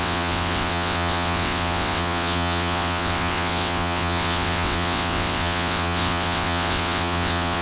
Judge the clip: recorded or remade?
remade